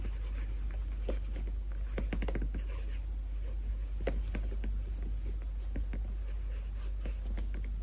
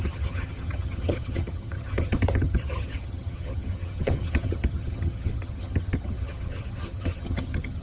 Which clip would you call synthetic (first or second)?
second